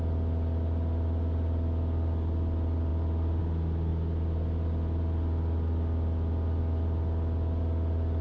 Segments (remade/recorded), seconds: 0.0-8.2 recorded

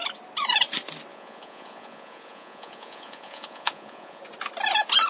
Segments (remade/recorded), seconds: 0.0-1.1 recorded; 1.1-4.2 remade; 4.2-5.1 recorded

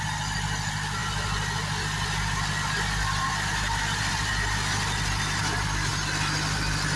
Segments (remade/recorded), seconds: 0.0-7.0 recorded

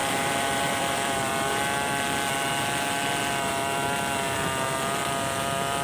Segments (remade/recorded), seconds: 0.0-1.3 remade; 1.3-5.8 recorded

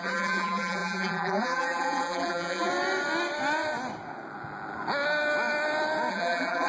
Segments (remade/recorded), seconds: 0.0-2.7 remade; 2.7-6.1 recorded; 6.1-6.7 remade

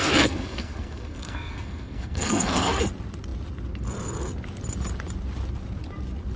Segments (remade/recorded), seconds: 0.0-2.8 remade; 2.8-6.4 recorded

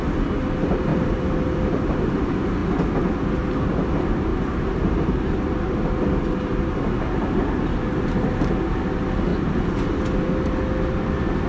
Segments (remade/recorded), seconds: 0.0-0.9 recorded; 0.9-1.6 remade; 1.6-4.3 recorded; 4.3-4.9 remade; 4.9-11.5 recorded

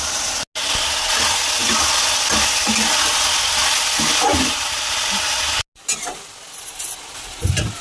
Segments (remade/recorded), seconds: 0.0-4.3 recorded; 4.3-4.9 remade; 4.9-7.8 recorded